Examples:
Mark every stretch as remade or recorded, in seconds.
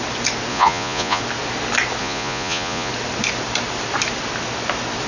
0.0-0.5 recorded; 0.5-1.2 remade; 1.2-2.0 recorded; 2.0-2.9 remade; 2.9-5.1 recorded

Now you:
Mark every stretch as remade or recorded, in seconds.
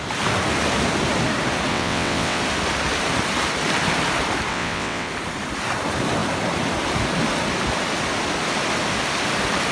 0.0-1.7 recorded; 1.7-2.4 remade; 2.4-4.5 recorded; 4.5-5.1 remade; 5.1-9.7 recorded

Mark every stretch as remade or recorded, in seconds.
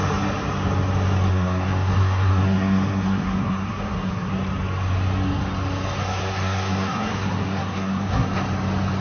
0.0-1.3 recorded; 1.3-4.3 remade; 4.3-6.0 recorded; 6.0-8.3 remade; 8.3-9.0 recorded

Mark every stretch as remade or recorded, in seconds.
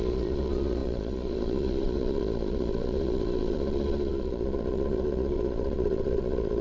0.0-6.6 remade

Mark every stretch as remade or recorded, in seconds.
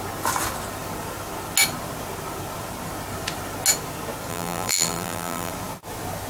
0.0-4.3 recorded; 4.3-5.5 remade; 5.5-6.3 recorded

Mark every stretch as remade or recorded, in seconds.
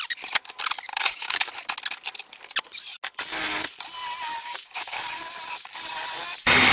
0.0-0.9 recorded; 0.9-1.5 remade; 1.5-4.4 recorded; 4.4-5.2 remade; 5.2-6.7 recorded